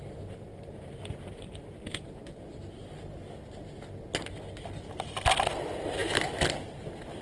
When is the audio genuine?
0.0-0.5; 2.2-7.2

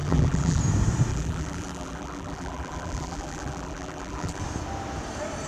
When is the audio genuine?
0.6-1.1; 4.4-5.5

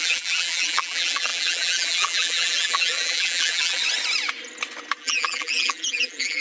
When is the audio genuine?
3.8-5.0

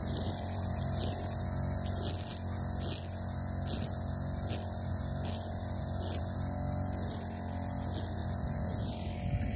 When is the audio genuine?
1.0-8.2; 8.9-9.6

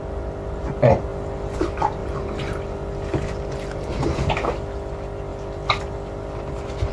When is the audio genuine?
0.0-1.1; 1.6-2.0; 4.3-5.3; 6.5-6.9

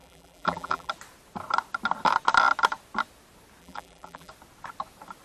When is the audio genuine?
0.9-3.6; 4.3-5.2

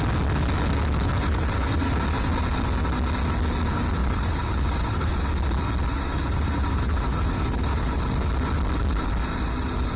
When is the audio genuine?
0.0-1.2; 1.9-4.0; 5.3-5.9; 8.0-10.0